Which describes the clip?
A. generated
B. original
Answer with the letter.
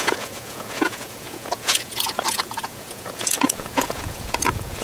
A